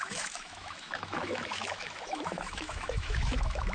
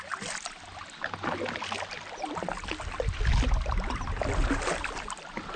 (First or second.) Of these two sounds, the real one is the second